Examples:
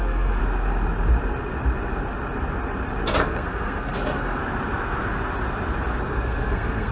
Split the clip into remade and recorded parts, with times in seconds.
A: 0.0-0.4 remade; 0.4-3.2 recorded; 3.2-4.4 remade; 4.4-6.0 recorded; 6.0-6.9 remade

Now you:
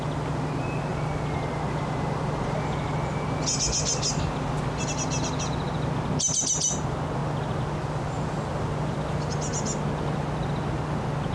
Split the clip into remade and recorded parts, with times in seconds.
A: 0.0-11.3 recorded

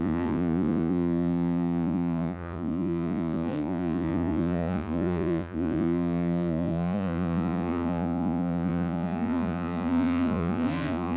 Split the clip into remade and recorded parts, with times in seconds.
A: 0.0-11.2 remade

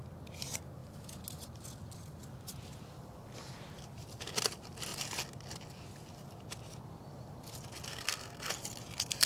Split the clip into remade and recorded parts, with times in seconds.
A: 0.0-7.9 recorded; 7.9-8.5 remade; 8.5-9.3 recorded

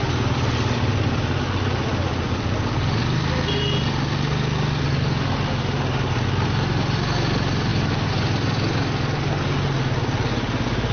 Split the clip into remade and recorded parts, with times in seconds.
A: 0.0-10.9 recorded

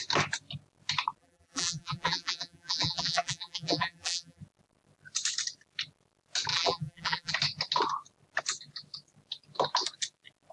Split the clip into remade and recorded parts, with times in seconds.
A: 0.0-1.2 recorded; 1.2-4.4 remade; 4.4-6.5 recorded; 6.5-7.3 remade; 7.3-10.5 recorded

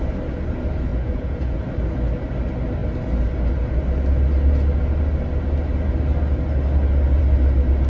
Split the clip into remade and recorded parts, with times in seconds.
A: 0.0-0.9 recorded; 0.9-1.6 remade; 1.6-7.9 recorded

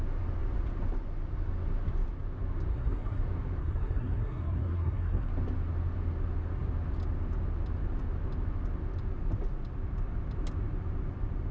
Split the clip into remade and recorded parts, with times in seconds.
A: 0.0-2.7 recorded; 2.7-3.2 remade; 3.2-3.6 recorded; 3.6-5.3 remade; 5.3-11.5 recorded